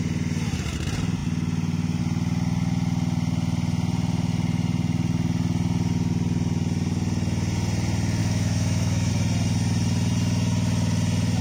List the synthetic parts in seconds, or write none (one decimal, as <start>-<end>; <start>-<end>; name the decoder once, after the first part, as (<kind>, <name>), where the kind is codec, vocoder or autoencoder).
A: 8.2-9.1 (autoencoder, DAC-VAE)